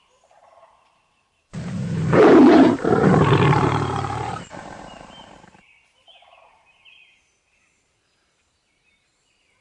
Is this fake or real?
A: fake